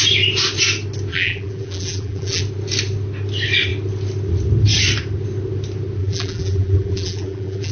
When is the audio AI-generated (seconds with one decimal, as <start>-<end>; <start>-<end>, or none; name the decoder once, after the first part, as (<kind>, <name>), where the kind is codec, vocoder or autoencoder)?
1.1-2.4 (vocoder, BigVGAN v2); 6.0-7.7